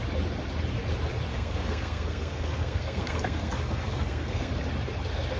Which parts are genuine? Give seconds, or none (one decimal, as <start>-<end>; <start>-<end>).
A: 0.0-1.3; 4.5-5.4